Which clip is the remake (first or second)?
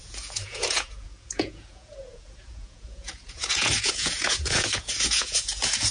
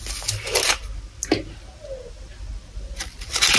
first